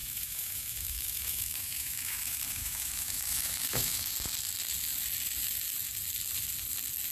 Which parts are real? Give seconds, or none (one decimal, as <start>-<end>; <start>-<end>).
4.1-7.1